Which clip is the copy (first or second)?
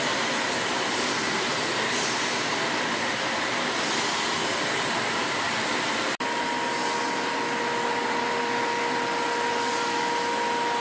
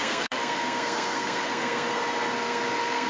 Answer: second